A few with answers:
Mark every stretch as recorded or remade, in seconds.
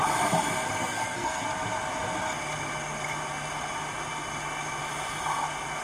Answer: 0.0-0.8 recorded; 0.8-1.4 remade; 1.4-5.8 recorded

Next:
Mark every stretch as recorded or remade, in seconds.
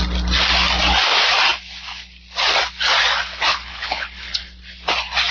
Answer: 0.0-3.5 recorded; 3.5-4.6 remade; 4.6-5.3 recorded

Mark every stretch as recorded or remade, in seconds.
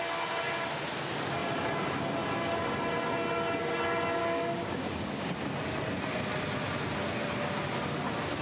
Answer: 0.0-4.2 recorded; 4.2-5.3 remade; 5.3-8.4 recorded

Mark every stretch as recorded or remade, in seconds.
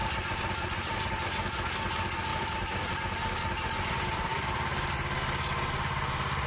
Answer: 0.0-1.0 remade; 1.0-2.3 recorded; 2.3-2.9 remade; 2.9-4.3 recorded; 4.3-4.9 remade; 4.9-6.5 recorded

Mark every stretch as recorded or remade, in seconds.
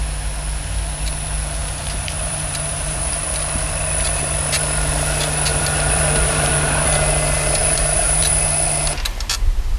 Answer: 0.0-1.6 recorded; 1.6-3.3 remade; 3.3-5.5 recorded; 5.5-6.5 remade; 6.5-7.6 recorded; 7.6-8.3 remade; 8.3-9.8 recorded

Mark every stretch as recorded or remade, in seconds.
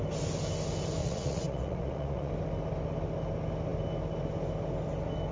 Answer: 0.0-1.0 recorded; 1.0-2.3 remade; 2.3-5.3 recorded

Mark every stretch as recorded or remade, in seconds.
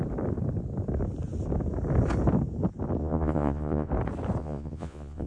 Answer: 0.0-3.0 recorded; 3.0-3.9 remade; 3.9-4.4 recorded; 4.4-5.3 remade